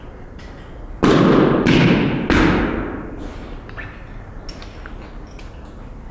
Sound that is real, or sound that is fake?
real